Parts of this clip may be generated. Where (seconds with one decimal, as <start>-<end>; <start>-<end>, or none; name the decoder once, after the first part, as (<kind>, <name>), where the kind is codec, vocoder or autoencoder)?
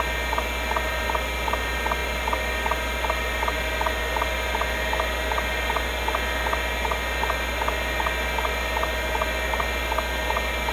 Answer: none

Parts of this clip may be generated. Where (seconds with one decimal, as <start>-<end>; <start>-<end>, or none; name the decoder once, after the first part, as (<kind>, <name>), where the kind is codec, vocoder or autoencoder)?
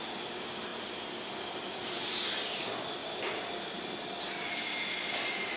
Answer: none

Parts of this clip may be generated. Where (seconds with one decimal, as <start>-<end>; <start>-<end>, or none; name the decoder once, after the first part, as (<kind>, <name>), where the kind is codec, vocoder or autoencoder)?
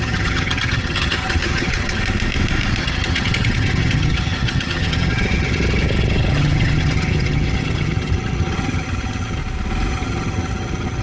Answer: 0.0-2.0 (vocoder, HiFi-GAN); 2.8-9.4; 9.9-11.0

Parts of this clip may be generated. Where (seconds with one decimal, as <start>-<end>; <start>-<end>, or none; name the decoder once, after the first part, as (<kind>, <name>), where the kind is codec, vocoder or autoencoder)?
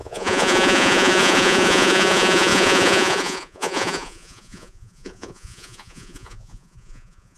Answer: 0.0-7.4 (vocoder, Vocos)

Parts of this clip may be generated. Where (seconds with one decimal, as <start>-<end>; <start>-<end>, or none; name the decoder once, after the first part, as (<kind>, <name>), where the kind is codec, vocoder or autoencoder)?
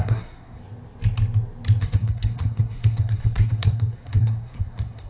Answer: 0.0-0.6 (codec, SNAC); 1.8-5.1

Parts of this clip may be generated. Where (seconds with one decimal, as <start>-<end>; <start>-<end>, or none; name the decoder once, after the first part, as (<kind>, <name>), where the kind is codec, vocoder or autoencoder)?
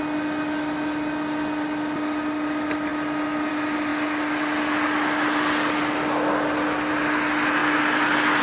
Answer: none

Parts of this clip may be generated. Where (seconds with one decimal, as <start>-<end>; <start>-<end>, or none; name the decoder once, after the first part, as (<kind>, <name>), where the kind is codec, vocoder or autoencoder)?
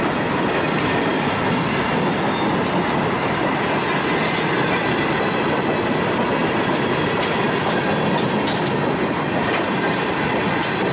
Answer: 6.4-7.8 (vocoder, BigVGAN v2)